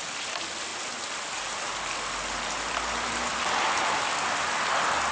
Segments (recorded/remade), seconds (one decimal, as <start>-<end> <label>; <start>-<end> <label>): 0.0-5.1 recorded